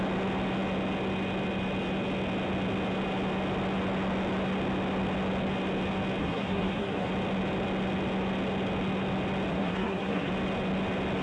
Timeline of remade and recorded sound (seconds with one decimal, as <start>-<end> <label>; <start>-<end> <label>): 0.0-6.2 recorded; 6.2-7.1 remade; 7.1-9.5 recorded; 9.5-10.3 remade; 10.3-11.2 recorded